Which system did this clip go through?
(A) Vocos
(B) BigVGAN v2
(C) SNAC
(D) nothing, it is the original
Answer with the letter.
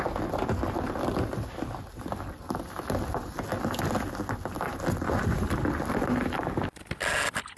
D